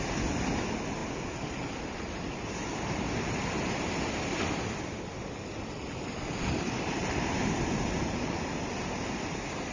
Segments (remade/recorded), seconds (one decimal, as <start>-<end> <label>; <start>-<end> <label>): 0.0-1.0 remade; 1.0-2.9 recorded; 2.9-9.7 remade